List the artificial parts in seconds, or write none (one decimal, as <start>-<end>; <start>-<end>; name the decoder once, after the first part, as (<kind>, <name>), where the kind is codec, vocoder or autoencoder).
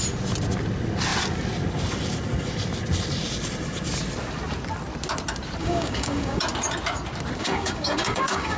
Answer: 5.6-6.4 (codec, DAC); 7.4-8.6